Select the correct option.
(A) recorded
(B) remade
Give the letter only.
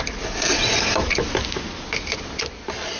A